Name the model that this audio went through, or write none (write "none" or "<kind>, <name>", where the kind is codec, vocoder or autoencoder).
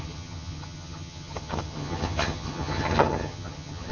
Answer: vocoder, HiFi-GAN